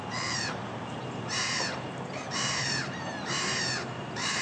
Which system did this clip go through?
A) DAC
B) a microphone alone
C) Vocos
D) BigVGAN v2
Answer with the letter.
D